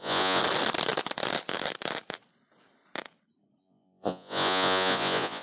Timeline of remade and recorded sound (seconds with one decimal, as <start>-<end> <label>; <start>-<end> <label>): 0.0-0.4 remade; 0.4-3.6 recorded; 3.6-5.4 remade